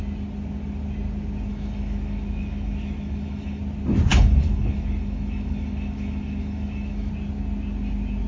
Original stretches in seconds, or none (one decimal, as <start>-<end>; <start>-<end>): 0.0-1.5; 3.6-4.1; 7.1-8.3